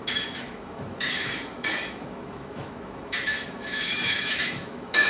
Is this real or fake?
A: fake